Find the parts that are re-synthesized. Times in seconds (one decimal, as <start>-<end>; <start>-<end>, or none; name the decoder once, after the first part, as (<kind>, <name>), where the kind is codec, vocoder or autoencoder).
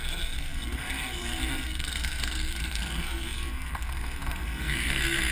0.0-5.3 (codec, SNAC)